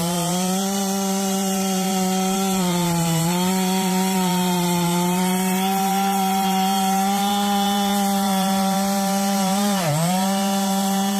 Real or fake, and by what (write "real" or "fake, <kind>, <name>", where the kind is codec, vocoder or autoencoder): fake, vocoder, BigVGAN v2